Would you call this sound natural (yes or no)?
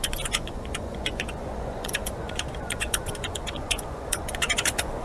no